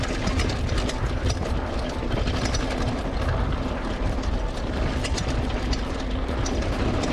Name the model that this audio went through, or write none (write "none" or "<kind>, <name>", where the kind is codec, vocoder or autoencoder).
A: none